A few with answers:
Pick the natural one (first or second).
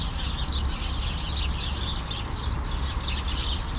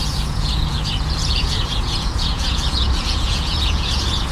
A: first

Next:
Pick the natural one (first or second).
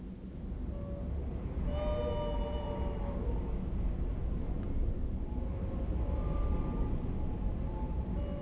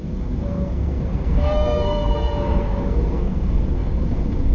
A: first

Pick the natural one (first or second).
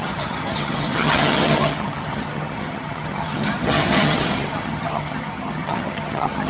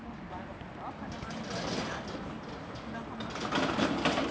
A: second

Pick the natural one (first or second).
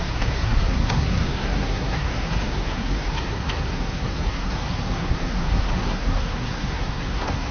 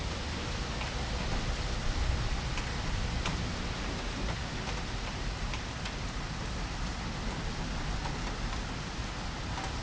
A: second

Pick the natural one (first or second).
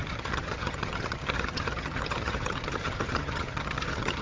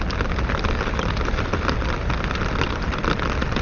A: second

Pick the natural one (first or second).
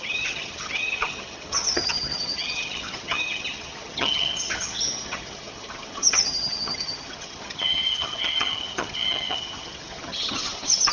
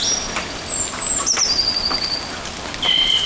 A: second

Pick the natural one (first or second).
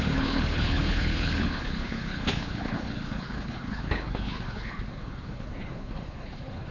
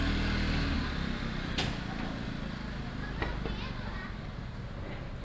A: second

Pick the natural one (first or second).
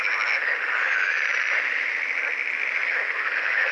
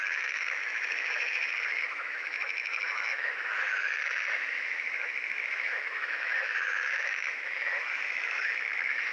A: first